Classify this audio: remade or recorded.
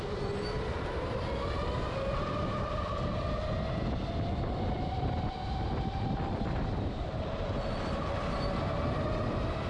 recorded